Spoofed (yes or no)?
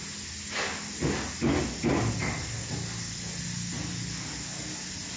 no